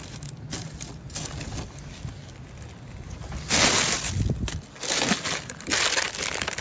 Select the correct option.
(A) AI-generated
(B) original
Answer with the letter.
B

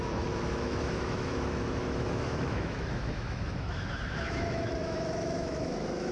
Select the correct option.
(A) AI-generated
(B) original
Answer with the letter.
A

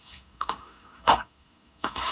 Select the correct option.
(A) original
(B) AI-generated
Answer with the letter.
B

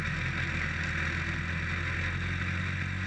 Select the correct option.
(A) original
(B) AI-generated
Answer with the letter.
A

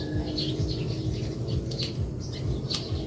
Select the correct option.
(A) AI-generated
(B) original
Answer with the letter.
B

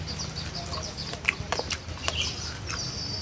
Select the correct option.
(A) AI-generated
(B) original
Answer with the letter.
B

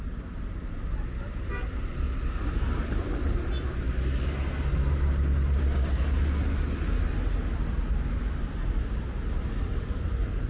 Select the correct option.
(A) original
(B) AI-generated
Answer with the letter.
A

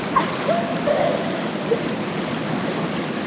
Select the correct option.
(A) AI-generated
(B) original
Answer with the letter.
B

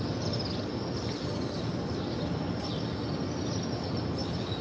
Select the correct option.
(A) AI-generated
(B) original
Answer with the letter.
B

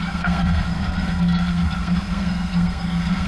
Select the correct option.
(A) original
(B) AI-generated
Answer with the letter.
B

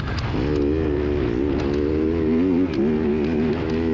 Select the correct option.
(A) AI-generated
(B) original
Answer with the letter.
B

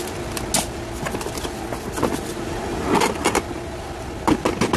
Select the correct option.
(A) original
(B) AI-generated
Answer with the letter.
A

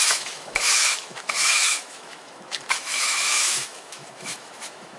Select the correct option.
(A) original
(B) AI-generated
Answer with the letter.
B